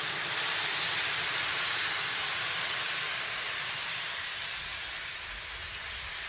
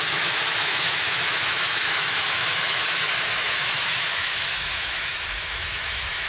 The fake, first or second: second